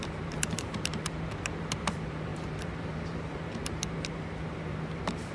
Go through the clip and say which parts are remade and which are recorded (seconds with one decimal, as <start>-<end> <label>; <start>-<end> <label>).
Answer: 0.0-5.3 remade